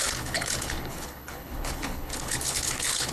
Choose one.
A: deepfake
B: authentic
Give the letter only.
A